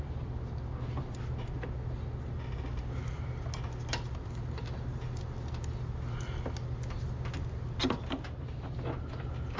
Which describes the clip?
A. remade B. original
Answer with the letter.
B